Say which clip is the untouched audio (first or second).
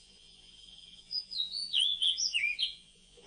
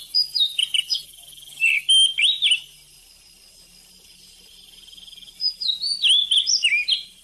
second